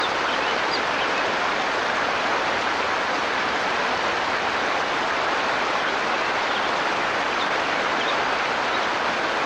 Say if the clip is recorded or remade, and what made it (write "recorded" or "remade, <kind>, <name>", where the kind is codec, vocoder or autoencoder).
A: recorded